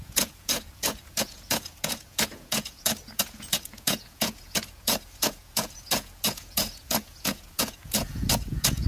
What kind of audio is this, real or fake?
fake